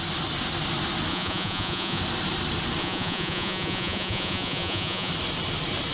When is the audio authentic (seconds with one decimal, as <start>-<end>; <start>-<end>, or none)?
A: 0.0-1.1; 2.0-2.8; 5.1-5.9